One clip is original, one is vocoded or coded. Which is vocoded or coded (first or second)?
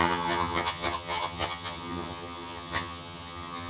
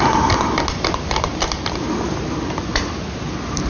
first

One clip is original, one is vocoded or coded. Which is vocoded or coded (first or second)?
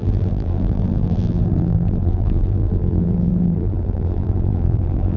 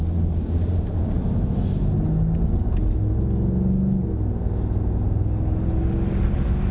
first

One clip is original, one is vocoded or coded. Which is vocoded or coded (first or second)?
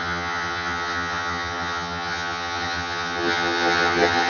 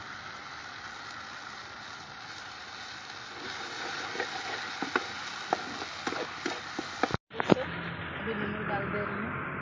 first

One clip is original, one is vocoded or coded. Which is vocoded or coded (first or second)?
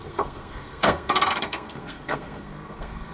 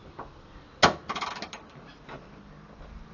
first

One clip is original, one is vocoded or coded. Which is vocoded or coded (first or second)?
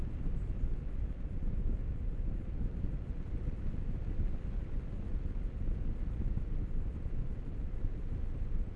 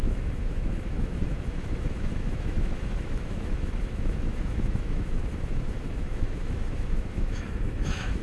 second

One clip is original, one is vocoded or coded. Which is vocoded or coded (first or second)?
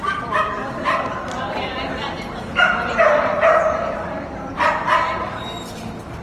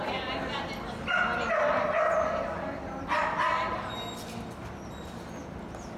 first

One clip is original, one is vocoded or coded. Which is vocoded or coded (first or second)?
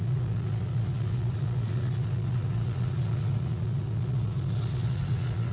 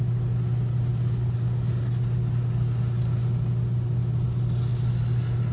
first